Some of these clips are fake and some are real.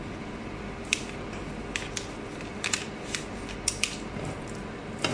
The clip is real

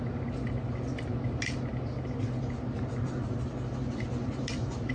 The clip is real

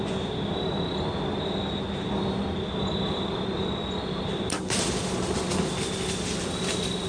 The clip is real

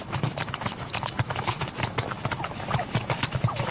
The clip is fake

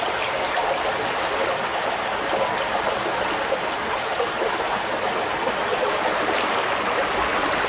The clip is real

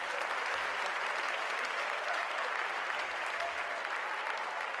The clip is real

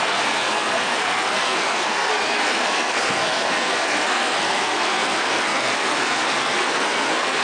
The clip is fake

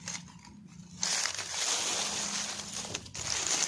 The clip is real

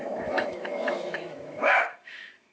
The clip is fake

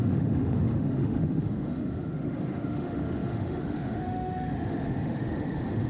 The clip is fake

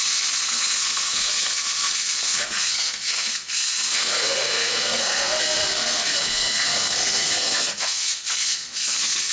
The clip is fake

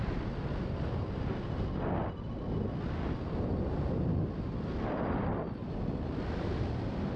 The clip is real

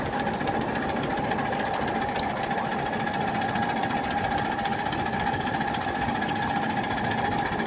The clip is real